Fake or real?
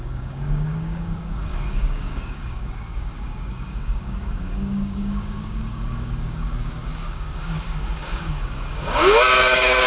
fake